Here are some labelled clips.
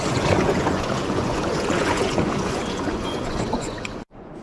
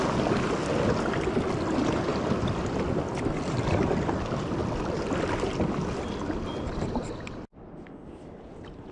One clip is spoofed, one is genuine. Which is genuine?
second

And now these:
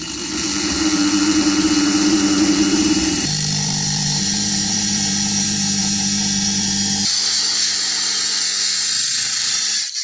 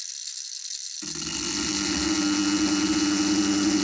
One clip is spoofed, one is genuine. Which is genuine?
second